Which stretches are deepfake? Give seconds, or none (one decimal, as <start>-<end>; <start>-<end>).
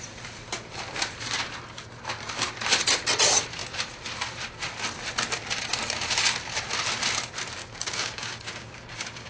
7.6-9.3